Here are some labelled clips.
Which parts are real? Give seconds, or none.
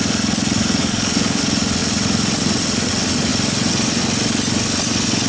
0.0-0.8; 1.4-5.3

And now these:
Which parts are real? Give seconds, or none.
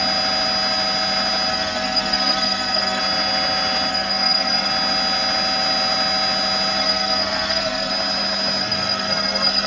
0.0-1.5; 3.0-3.9; 4.7-6.8; 7.9-8.6